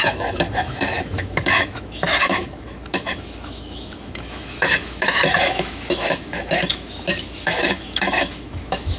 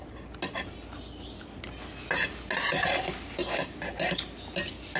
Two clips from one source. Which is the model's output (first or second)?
first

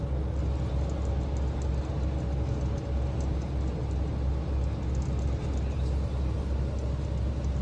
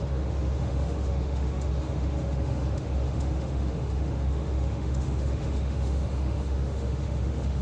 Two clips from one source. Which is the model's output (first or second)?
second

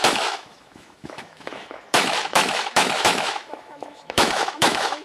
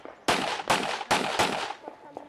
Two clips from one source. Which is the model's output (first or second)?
first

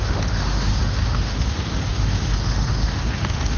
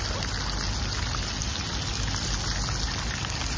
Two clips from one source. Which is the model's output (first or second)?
first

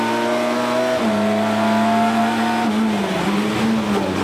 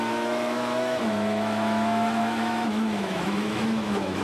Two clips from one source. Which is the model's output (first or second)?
second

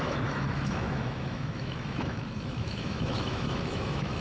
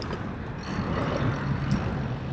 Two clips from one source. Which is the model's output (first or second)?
first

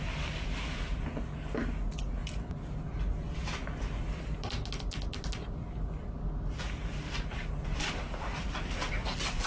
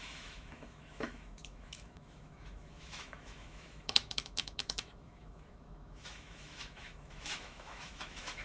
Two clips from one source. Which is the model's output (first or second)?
second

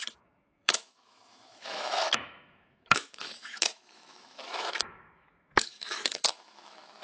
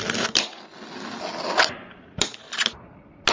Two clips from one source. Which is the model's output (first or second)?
first